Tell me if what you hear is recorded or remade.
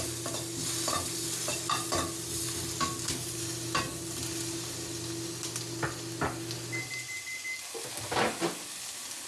recorded